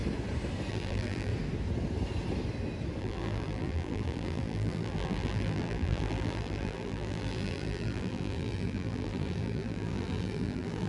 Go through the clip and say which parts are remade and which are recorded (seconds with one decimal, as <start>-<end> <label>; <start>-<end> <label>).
0.0-0.7 recorded; 0.7-1.3 remade; 1.3-3.0 recorded; 3.0-10.9 remade